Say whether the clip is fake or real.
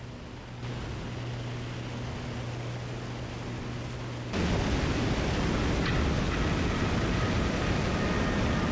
real